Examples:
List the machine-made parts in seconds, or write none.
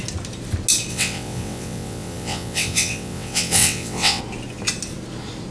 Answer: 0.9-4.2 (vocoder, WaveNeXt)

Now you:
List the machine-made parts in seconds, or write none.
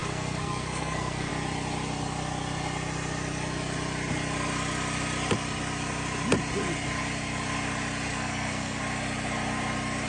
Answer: 0.0-1.3 (codec, SNAC); 8.1-8.8